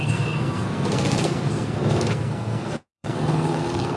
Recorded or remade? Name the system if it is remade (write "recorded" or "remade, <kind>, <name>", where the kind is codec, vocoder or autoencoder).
remade, codec, SNAC